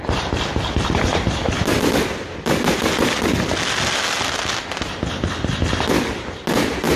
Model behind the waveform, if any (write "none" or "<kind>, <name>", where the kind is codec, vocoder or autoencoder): none